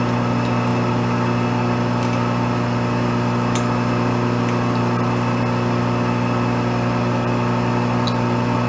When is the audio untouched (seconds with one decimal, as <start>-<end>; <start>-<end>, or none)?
0.0-8.7